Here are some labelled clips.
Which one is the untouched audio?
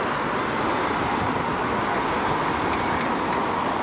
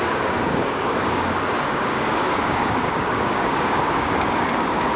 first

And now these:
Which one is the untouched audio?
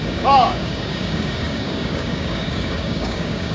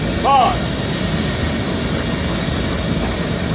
second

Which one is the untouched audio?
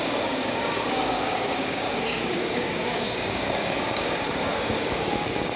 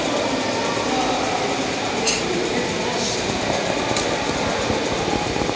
second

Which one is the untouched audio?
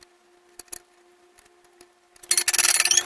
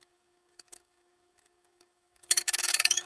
first